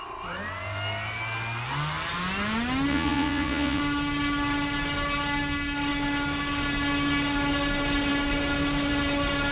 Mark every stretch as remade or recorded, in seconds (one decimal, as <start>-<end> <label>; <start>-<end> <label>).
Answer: 0.0-2.9 recorded; 2.9-3.8 remade; 3.8-9.5 recorded